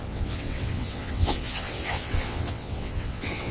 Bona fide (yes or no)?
no